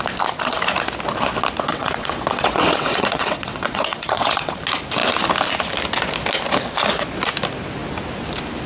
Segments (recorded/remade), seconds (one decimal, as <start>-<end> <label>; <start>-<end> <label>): 0.0-1.7 recorded; 1.7-4.6 remade; 4.6-8.7 recorded